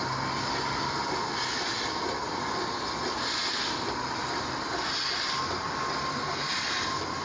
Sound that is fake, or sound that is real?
real